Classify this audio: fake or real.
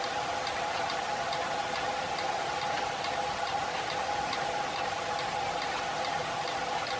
real